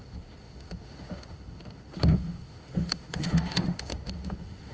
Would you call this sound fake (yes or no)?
yes